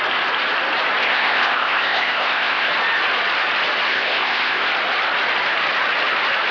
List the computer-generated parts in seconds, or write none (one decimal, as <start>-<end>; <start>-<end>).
1.0-2.7; 3.9-4.7